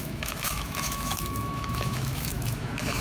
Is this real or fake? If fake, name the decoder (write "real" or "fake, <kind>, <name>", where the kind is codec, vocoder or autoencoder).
fake, autoencoder, DAC-VAE